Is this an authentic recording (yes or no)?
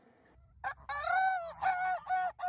yes